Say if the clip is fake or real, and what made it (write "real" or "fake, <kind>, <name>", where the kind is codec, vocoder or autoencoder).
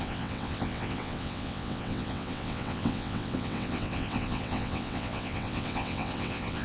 fake, vocoder, WaveNeXt